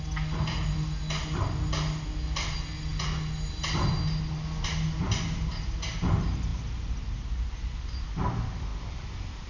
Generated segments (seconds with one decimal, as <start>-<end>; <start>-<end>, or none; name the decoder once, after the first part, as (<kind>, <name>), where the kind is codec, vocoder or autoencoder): none